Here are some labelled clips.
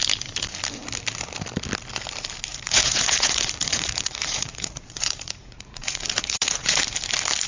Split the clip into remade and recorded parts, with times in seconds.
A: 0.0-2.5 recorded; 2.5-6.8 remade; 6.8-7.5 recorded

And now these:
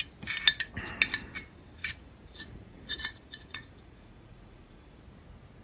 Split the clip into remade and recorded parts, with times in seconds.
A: 0.0-1.8 recorded; 1.8-5.0 remade; 5.0-5.6 recorded